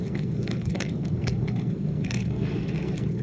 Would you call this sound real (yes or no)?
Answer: no